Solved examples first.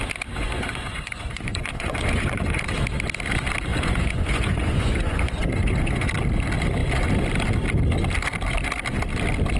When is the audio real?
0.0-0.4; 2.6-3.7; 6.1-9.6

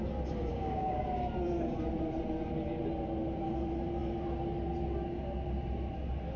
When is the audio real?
0.0-0.5; 1.0-6.4

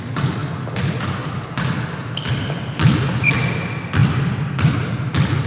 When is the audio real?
0.0-4.0; 4.9-5.5

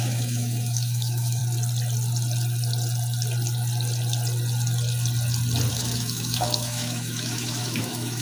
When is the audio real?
1.4-5.7

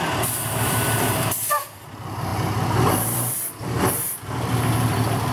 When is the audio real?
none

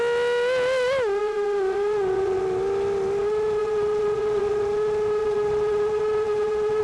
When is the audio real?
0.0-1.2; 2.4-3.6; 4.6-5.2